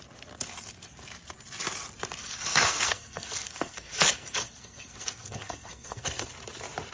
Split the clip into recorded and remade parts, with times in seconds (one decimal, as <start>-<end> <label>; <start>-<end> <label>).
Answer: 0.0-2.2 recorded; 2.2-6.3 remade; 6.3-6.9 recorded